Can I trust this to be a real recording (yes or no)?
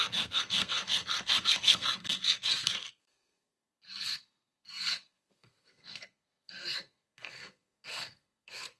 no